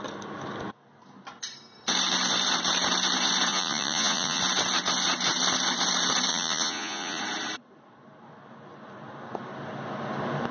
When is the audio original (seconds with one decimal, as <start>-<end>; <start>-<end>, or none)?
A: 0.0-3.5; 4.4-6.3; 7.2-10.5